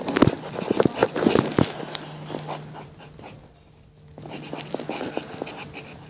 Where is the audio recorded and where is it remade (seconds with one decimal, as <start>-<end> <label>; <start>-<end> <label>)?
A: 0.0-6.1 recorded